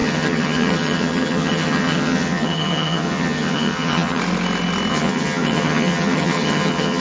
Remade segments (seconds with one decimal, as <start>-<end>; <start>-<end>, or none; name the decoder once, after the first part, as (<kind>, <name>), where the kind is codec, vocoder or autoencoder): 0.0-4.2 (vocoder, HiFi-GAN); 4.9-7.0